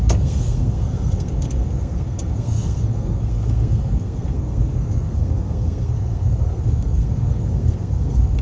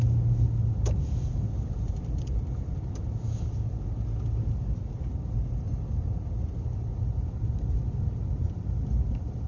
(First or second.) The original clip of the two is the second